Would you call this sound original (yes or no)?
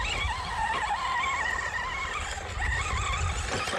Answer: yes